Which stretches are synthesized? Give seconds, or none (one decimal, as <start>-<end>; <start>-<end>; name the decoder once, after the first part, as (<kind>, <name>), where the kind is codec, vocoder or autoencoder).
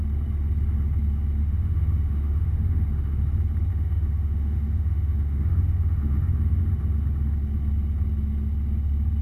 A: 1.4-3.2 (autoencoder, DAC-VAE); 3.7-6.6